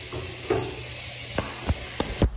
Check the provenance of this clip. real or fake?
real